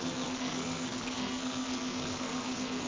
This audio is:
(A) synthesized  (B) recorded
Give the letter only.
A